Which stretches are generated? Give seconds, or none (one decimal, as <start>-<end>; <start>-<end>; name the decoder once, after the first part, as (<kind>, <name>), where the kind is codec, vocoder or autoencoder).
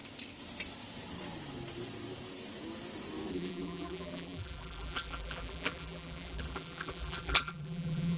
3.3-8.2 (vocoder, BigVGAN v2)